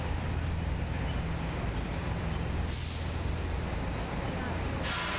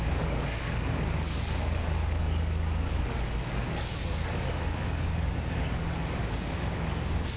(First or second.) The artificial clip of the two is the second